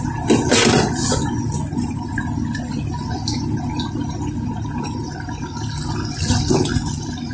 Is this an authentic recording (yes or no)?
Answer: yes